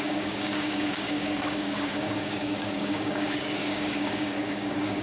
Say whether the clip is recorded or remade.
remade